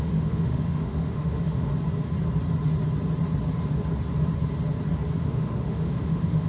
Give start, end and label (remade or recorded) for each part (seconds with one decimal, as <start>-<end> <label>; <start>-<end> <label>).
0.0-1.7 remade; 1.7-5.2 recorded; 5.2-6.5 remade